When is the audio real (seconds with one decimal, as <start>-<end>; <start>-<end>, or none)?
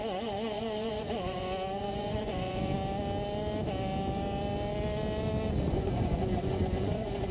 2.7-5.7